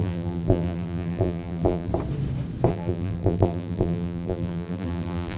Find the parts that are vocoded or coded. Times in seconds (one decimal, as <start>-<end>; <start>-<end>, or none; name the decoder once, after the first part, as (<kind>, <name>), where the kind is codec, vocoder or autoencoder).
0.0-1.9 (vocoder, BigVGAN v2); 2.7-5.4